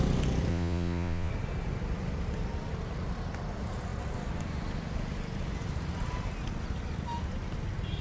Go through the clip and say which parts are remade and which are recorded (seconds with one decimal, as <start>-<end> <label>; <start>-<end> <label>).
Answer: 0.0-0.5 recorded; 0.5-1.3 remade; 1.3-8.0 recorded